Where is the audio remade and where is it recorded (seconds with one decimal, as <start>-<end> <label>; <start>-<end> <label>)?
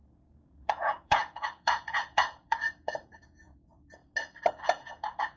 0.0-4.0 remade; 4.0-4.6 recorded; 4.6-5.4 remade